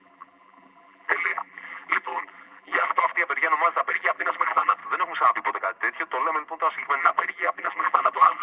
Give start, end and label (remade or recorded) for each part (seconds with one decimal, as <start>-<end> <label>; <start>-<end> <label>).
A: 0.0-3.1 remade; 3.1-3.9 recorded; 3.9-4.8 remade; 4.8-7.0 recorded; 7.0-8.4 remade